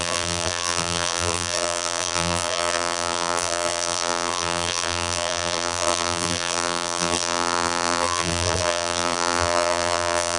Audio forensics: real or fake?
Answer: fake